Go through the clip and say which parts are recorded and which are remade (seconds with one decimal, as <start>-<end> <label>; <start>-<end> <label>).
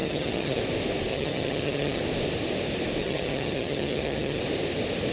0.0-0.6 remade; 0.6-1.1 recorded; 1.1-2.0 remade; 2.0-3.0 recorded; 3.0-4.4 remade; 4.4-5.1 recorded